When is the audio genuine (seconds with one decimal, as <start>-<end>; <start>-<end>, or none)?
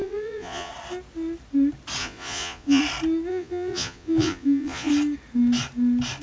0.7-2.0; 2.8-3.3; 4.9-6.2